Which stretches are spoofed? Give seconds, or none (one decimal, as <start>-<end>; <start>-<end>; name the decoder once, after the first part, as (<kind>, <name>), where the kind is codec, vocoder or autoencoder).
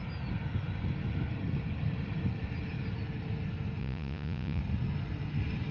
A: 3.8-4.6 (vocoder, Vocos)